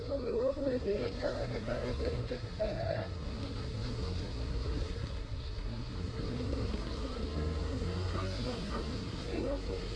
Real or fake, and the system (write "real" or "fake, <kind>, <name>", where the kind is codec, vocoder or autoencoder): fake, codec, SNAC